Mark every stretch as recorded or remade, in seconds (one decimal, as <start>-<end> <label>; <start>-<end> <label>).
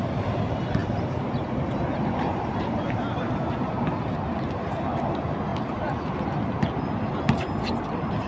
0.0-8.3 recorded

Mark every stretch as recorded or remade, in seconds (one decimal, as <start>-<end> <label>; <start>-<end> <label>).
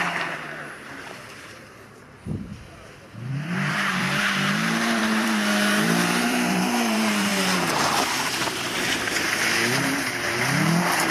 0.0-2.5 remade; 2.5-3.3 recorded; 3.3-11.1 remade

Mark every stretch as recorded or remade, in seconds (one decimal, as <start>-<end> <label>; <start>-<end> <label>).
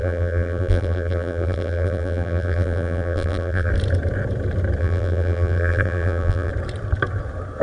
0.0-3.7 remade; 3.7-4.8 recorded; 4.8-6.5 remade; 6.5-7.6 recorded